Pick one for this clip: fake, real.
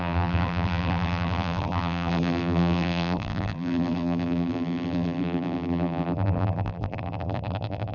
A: fake